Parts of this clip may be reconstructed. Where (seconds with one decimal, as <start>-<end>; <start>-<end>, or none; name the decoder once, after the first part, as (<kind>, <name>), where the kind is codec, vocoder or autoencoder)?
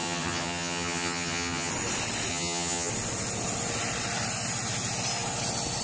0.0-1.7 (vocoder, HiFi-GAN); 2.3-2.9